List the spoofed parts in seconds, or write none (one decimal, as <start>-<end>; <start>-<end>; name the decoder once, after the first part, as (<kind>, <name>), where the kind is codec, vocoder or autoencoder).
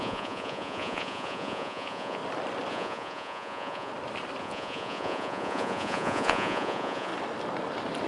0.0-2.2 (vocoder, Vocos); 2.7-3.9; 4.4-7.1